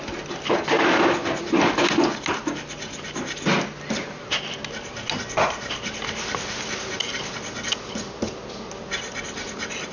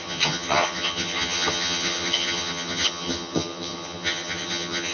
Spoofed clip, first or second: second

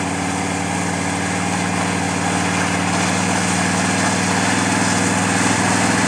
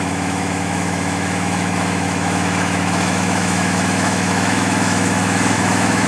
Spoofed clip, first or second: second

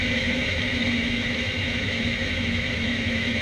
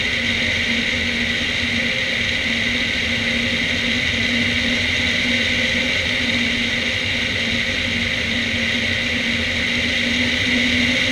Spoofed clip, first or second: first